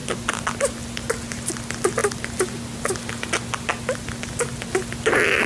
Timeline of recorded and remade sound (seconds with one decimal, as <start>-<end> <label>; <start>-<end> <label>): 0.0-5.5 recorded